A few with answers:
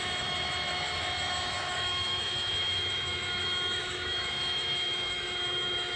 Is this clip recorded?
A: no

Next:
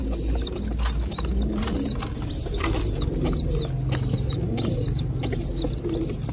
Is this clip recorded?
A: yes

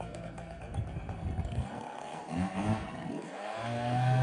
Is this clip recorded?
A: no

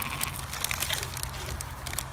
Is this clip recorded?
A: yes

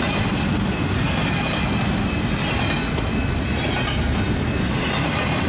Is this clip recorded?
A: yes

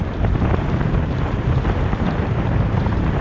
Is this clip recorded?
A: no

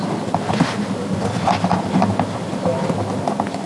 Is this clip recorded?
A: yes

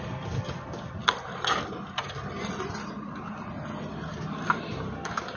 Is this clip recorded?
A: yes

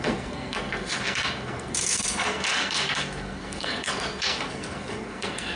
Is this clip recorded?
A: no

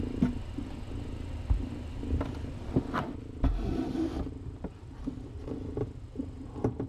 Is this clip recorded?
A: yes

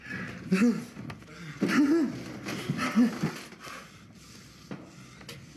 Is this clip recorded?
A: yes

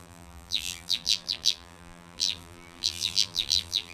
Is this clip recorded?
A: no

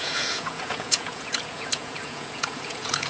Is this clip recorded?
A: no